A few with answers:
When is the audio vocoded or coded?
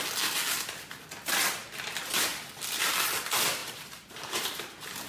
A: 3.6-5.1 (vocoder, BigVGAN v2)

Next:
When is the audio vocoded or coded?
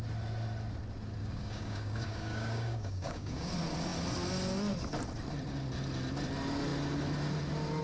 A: 1.2-3.5 (codec, DAC)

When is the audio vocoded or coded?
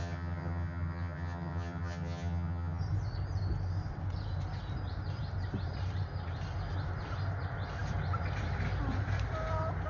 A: 0.0-2.8 (vocoder, HiFi-GAN)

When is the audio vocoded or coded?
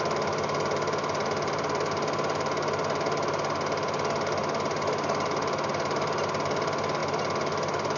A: none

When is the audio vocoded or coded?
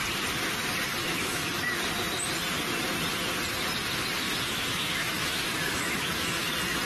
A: 1.0-1.6 (autoencoder, DAC-VAE); 4.2-6.5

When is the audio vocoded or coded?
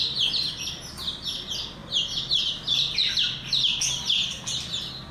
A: none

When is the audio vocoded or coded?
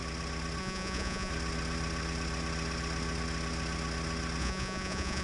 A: 0.6-1.3 (vocoder, Vocos); 4.4-5.2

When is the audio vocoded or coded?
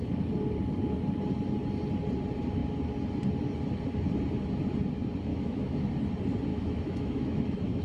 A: 5.3-5.9 (autoencoder, DAC-VAE); 6.5-7.8